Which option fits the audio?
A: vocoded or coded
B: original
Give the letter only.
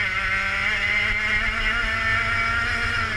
B